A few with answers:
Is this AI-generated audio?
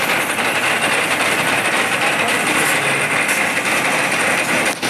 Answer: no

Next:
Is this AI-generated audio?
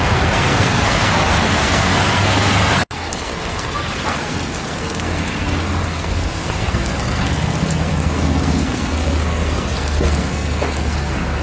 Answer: yes